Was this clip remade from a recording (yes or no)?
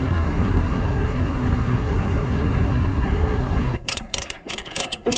yes